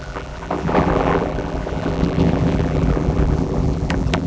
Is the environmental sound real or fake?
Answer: fake